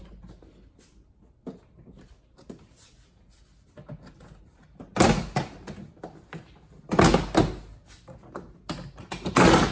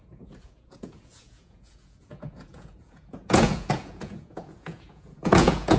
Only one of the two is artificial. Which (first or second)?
second